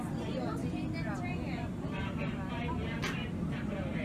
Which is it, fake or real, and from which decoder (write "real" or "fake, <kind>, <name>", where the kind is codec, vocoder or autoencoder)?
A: real